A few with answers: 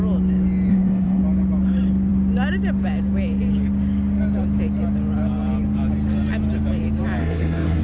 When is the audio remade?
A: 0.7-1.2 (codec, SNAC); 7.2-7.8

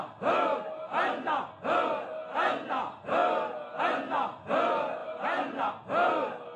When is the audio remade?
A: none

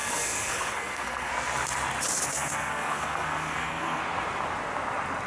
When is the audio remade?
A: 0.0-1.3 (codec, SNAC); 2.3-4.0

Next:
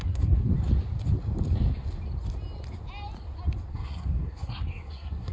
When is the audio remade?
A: 0.0-0.5 (codec, SNAC); 3.7-5.3

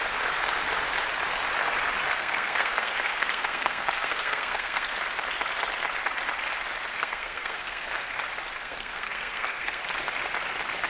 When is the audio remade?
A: 2.1-4.9 (codec, SNAC); 6.9-8.1; 8.6-9.8